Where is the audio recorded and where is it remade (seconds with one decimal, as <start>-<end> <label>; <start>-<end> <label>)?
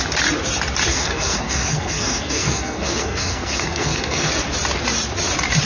0.0-0.9 recorded; 0.9-4.3 remade; 4.3-5.7 recorded